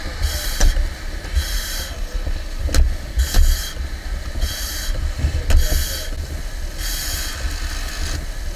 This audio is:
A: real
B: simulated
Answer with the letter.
A